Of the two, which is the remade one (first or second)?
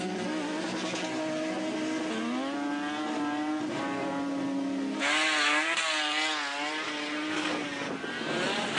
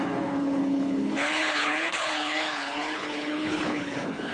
second